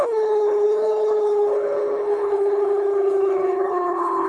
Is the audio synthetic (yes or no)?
yes